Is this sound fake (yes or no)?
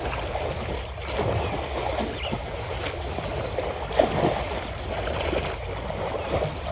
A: no